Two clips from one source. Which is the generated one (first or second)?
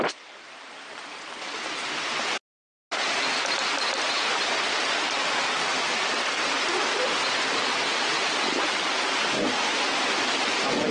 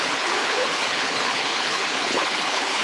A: second